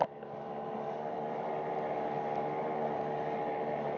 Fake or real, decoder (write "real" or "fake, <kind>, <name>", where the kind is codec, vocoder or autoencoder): real